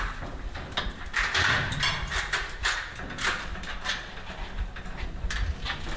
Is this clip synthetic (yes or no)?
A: no